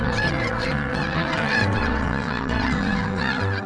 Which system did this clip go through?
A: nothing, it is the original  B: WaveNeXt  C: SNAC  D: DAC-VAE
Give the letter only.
B